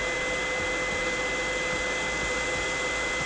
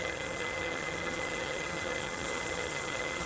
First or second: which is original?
first